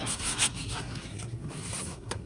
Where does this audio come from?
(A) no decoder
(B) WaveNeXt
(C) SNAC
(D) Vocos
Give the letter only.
C